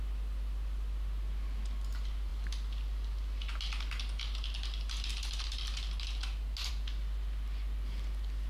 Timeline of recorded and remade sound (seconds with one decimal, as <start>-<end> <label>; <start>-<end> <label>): 0.0-8.5 recorded